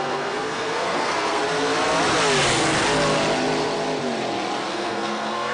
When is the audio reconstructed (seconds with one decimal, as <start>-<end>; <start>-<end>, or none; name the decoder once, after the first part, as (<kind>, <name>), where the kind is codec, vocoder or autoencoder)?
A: 0.0-1.4 (codec, SNAC); 4.7-5.5